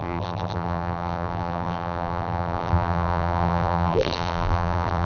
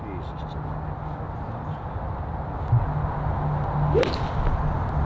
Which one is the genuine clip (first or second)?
second